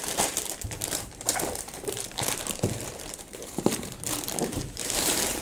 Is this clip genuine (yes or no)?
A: no